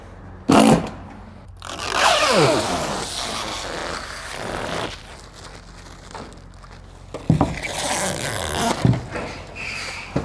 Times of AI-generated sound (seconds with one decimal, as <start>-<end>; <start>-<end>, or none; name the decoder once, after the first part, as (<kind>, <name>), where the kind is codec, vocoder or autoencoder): none